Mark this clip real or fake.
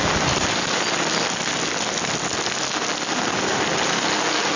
real